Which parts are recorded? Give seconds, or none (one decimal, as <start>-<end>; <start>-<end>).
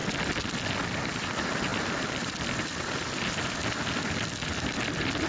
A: 0.0-1.0